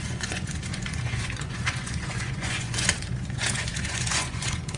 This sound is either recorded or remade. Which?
remade